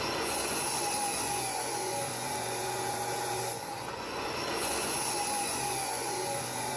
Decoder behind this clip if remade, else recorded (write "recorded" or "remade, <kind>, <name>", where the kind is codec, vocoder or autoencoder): remade, vocoder, Vocos